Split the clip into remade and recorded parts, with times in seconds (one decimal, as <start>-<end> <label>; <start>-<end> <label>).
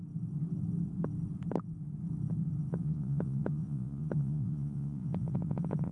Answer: 0.0-2.7 recorded; 2.7-5.9 remade